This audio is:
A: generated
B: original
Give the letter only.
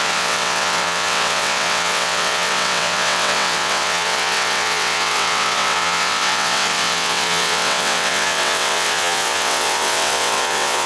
A